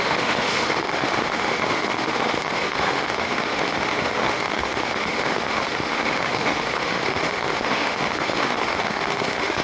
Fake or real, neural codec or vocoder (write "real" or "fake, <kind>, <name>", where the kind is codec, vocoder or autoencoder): fake, autoencoder, DAC-VAE